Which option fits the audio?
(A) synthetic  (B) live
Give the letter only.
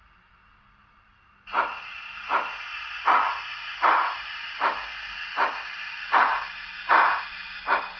B